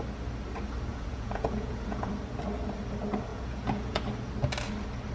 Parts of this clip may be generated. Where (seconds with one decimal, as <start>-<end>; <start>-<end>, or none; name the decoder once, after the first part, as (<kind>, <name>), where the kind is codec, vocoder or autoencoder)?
0.9-2.1 (vocoder, Vocos); 3.3-4.0